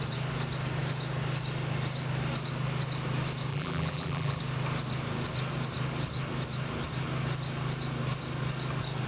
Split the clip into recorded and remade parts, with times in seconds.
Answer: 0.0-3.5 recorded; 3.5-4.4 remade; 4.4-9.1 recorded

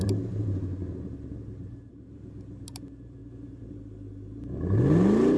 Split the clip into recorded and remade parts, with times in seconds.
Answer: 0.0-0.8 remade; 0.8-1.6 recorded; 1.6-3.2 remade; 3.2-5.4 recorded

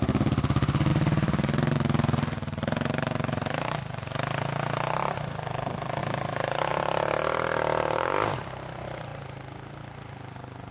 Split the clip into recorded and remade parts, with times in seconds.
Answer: 0.0-0.9 recorded; 0.9-4.0 remade; 4.0-10.7 recorded

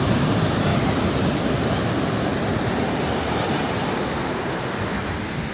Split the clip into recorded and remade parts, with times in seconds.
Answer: 0.0-0.7 recorded; 0.7-1.7 remade; 1.7-2.3 recorded; 2.3-4.6 remade; 4.6-5.5 recorded

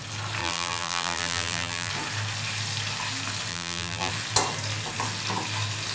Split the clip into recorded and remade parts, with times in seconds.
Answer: 0.0-0.4 recorded; 0.4-1.9 remade; 1.9-3.5 recorded; 3.5-4.1 remade; 4.1-5.9 recorded

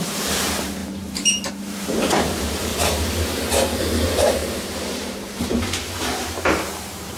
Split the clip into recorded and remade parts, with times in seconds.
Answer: 0.0-2.7 remade; 2.7-3.8 recorded; 3.8-7.2 remade